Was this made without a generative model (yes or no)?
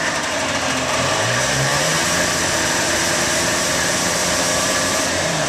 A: no